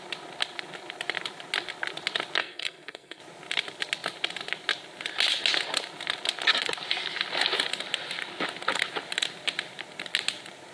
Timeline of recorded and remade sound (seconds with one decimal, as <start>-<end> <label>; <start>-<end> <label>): 0.0-2.4 recorded; 2.4-3.2 remade; 3.2-10.7 recorded